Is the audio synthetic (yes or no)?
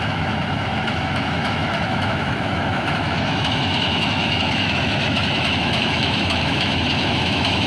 yes